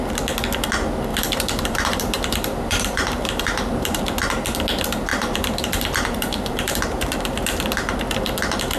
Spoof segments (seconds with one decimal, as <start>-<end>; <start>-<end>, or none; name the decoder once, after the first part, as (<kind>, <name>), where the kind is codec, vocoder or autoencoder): 1.1-4.0 (vocoder, BigVGAN v2); 5.1-6.8